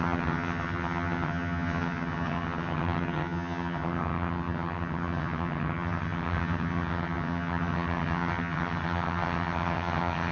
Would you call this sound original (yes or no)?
no